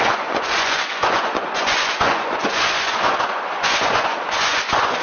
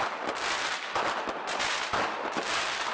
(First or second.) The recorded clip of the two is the second